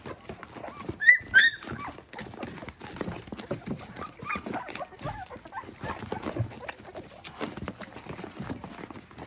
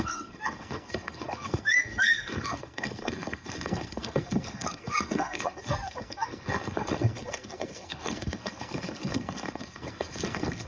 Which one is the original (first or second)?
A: first